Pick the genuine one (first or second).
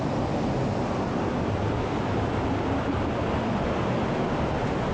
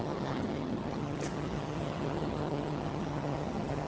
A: first